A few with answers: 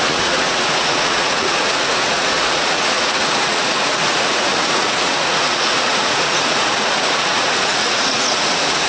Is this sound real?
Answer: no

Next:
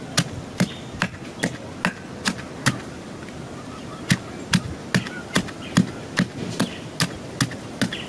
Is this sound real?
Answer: yes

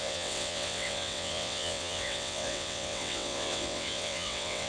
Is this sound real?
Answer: no